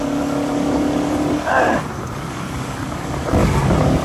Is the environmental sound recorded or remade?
remade